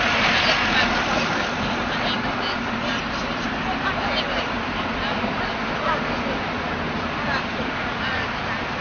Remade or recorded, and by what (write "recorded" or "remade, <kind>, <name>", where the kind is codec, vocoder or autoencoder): remade, vocoder, BigVGAN v2